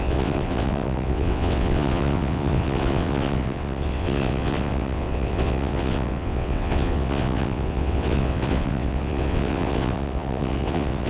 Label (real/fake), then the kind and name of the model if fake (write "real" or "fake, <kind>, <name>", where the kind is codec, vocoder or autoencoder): fake, vocoder, WaveNeXt